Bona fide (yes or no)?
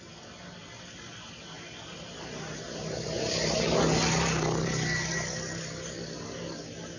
yes